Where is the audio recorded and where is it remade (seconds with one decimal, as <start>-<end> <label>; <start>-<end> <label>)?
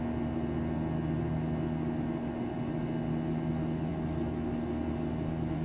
0.0-5.6 recorded